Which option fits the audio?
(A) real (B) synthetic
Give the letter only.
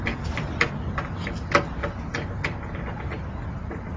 A